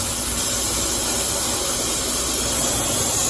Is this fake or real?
real